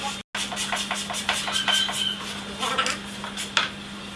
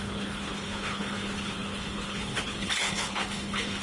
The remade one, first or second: second